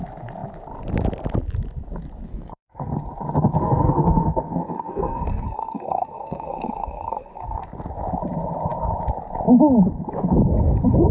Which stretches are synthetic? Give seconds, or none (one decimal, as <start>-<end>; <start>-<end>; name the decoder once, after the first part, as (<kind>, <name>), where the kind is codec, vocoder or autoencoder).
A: 2.3-2.9 (codec, SNAC); 3.5-7.6